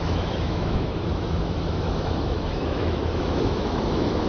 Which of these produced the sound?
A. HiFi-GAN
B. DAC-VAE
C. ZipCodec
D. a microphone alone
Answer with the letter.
B